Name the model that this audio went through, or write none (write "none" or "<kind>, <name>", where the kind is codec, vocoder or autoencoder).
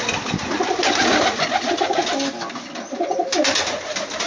none